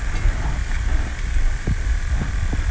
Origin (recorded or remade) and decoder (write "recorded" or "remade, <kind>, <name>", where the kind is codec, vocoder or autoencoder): recorded